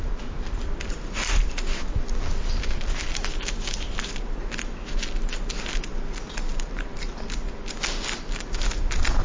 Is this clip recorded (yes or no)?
yes